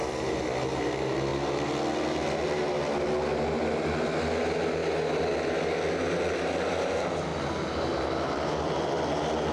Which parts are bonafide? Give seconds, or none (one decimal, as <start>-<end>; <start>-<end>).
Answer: 0.0-9.5